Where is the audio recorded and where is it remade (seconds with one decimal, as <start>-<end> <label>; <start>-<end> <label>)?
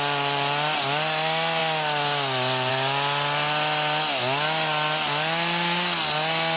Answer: 0.0-6.6 recorded